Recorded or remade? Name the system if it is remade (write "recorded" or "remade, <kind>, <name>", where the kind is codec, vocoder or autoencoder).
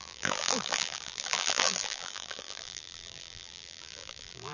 remade, vocoder, BigVGAN v2